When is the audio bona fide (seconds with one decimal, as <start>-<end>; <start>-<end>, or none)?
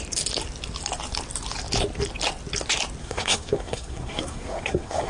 0.0-3.0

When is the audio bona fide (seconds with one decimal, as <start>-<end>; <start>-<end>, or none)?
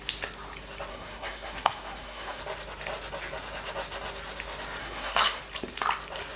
0.0-0.9; 2.4-4.8; 5.4-6.4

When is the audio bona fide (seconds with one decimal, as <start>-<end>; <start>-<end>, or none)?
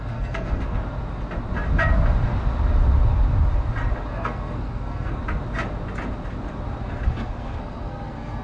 0.8-4.1; 5.2-6.8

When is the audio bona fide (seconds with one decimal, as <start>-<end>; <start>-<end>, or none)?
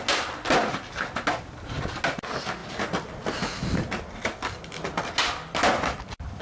0.0-6.4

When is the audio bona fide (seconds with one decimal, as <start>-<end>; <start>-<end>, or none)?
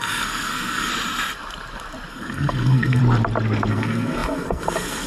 0.9-2.1; 3.0-3.7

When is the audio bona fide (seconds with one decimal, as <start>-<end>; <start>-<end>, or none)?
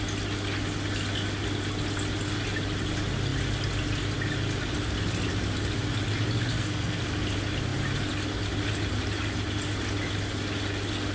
0.0-6.5; 7.0-11.1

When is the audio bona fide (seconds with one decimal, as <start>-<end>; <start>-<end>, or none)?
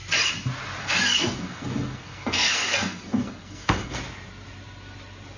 0.0-0.8; 4.0-5.4